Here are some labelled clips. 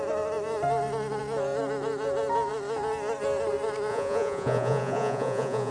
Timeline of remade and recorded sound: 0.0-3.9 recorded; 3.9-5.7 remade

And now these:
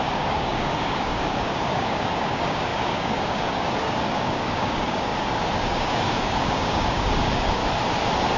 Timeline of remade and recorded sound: 0.0-7.6 remade; 7.6-8.4 recorded